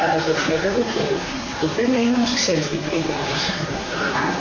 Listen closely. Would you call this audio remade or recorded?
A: remade